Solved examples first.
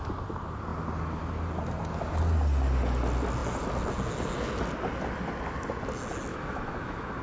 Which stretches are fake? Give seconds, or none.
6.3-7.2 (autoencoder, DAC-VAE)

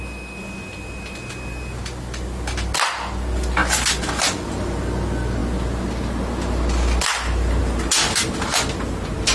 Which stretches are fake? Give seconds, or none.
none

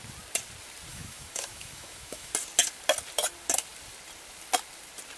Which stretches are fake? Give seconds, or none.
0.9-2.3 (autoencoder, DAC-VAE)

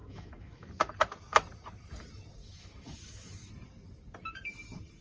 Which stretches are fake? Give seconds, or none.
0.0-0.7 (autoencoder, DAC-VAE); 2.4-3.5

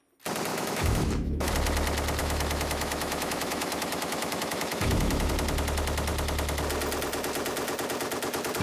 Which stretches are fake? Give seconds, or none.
0.5-1.5 (autoencoder, DAC-VAE); 2.2-5.3

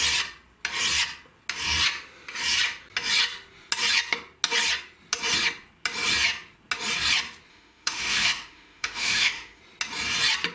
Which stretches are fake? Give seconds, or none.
7.5-9.6 (autoencoder, DAC-VAE)

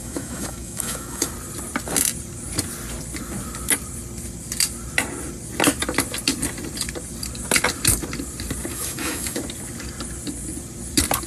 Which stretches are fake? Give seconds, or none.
0.0-1.3 (autoencoder, DAC-VAE); 8.7-9.4